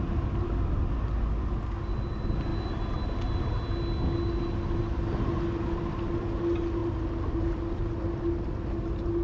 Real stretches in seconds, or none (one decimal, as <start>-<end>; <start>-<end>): 0.0-9.2